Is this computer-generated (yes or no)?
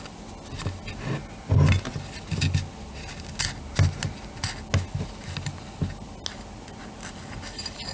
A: no